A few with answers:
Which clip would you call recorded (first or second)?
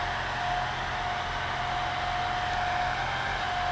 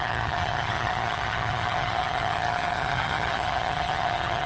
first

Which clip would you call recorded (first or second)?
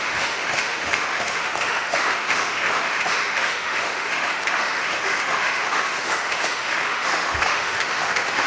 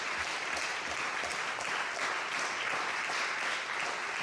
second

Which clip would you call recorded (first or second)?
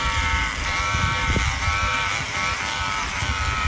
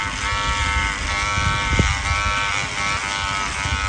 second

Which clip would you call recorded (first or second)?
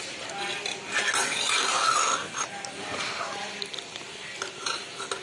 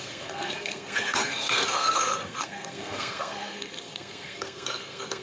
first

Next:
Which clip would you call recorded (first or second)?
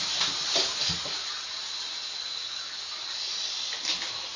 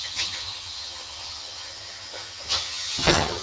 first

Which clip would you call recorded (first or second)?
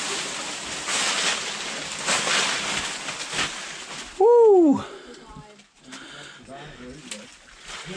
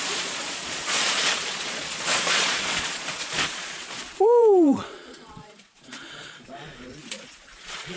first